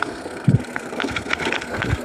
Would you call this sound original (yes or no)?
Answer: no